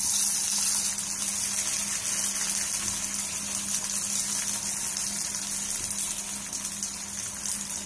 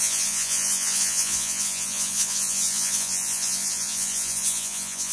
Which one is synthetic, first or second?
second